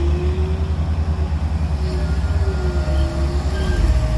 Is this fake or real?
real